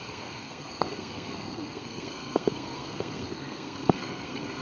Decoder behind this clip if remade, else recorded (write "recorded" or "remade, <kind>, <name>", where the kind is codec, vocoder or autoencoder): remade, codec, SNAC